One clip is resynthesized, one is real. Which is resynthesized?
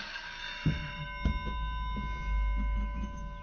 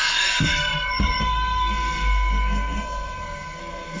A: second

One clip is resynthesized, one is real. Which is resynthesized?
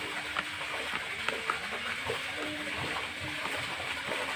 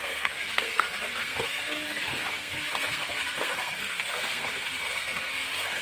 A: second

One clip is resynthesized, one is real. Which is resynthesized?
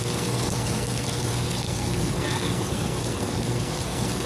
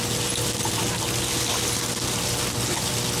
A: first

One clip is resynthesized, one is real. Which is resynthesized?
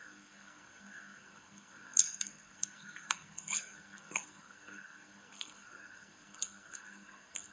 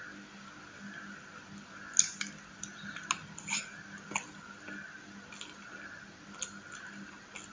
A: first